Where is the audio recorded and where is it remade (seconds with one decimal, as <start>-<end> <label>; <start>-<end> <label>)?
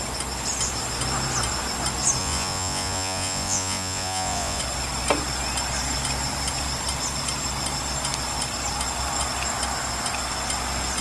0.0-2.2 recorded; 2.2-4.6 remade; 4.6-11.0 recorded